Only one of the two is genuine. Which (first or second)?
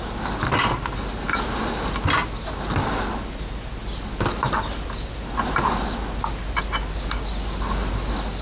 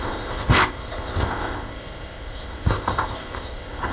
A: first